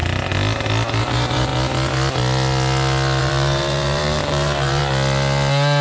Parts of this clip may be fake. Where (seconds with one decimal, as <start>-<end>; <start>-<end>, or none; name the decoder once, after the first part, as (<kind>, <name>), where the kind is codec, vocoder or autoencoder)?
1.0-1.5 (vocoder, BigVGAN v2); 3.2-4.8